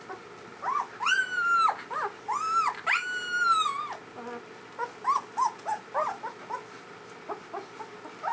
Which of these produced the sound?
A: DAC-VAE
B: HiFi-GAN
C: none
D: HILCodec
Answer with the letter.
C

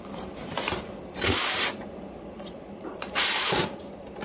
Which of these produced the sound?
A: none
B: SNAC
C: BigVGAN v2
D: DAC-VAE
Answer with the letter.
C